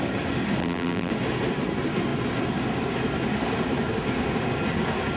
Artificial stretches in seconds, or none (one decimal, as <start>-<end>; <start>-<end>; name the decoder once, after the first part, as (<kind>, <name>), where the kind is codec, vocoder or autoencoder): 0.6-1.1 (vocoder, BigVGAN v2)